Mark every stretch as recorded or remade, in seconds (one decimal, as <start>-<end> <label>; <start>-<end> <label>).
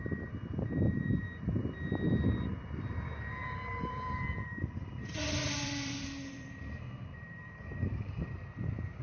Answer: 0.0-3.4 recorded; 3.4-8.4 remade; 8.4-9.0 recorded